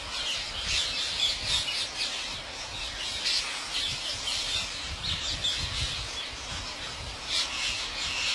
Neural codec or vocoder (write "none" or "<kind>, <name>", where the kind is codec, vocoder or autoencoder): none